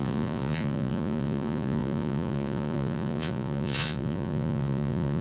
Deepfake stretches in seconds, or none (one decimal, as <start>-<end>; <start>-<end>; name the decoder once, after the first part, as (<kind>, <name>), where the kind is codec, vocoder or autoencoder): 0.0-5.2 (vocoder, Vocos)